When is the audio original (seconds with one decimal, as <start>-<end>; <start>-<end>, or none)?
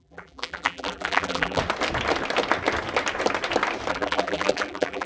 1.6-3.9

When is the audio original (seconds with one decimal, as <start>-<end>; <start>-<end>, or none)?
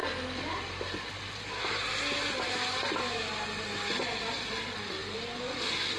0.0-6.0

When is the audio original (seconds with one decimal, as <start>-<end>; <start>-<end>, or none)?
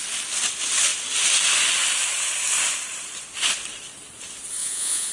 0.0-4.6